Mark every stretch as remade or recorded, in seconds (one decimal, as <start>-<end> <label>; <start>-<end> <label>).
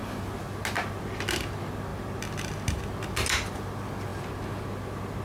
0.0-5.2 recorded